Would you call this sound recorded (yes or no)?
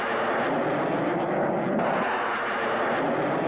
yes